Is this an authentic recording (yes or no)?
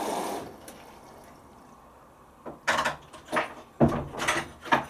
yes